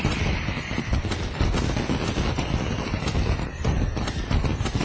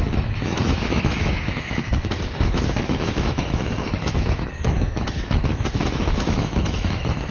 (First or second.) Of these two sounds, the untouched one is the first